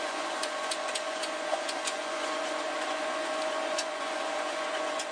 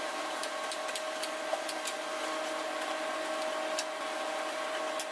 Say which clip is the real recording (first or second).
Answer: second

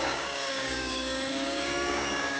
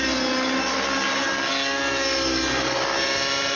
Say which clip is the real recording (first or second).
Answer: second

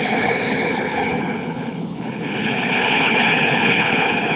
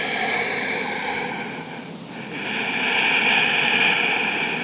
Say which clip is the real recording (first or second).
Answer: second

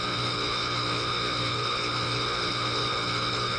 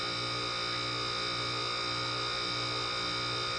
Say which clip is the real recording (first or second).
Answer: second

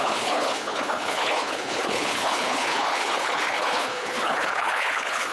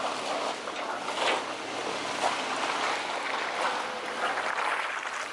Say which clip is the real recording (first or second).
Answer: second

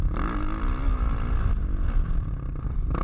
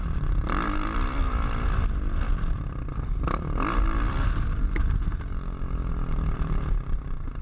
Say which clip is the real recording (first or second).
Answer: first